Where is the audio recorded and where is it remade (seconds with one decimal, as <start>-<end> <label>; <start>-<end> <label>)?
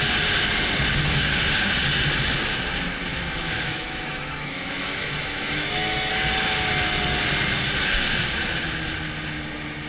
0.0-3.1 recorded; 3.1-6.1 remade; 6.1-9.9 recorded